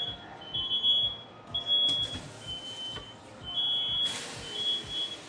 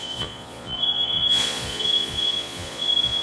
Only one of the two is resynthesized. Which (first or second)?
second